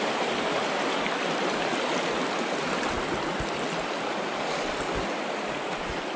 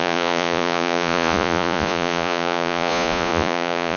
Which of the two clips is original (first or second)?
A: first